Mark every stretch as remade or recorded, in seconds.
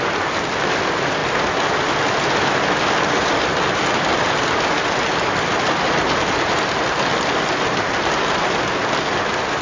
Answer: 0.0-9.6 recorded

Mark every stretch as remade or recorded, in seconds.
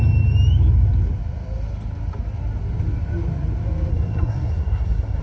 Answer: 0.0-3.9 recorded; 3.9-5.2 remade